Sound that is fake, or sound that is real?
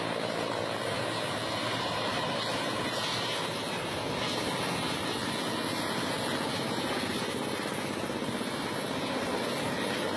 real